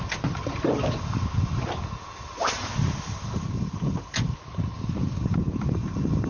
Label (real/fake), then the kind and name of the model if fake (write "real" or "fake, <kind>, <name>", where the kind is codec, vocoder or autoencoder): real